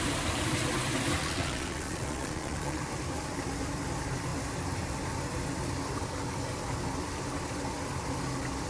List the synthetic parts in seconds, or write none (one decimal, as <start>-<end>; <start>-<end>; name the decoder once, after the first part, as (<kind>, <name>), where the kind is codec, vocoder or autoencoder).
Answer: 1.2-2.8 (vocoder, Vocos)